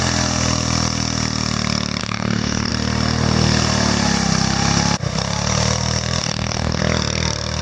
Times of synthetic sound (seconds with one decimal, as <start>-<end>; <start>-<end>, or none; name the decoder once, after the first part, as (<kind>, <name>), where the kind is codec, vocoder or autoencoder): 2.0-2.7 (codec, DAC); 6.2-6.8